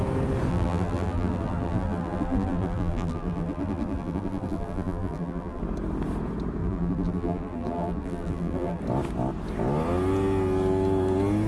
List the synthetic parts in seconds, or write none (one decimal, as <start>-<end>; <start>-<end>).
0.5-5.6; 6.6-8.8